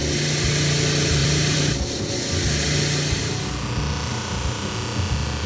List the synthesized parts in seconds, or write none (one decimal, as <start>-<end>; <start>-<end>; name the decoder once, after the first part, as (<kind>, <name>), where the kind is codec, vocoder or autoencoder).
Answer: 1.2-2.1 (vocoder, BigVGAN v2); 4.1-4.7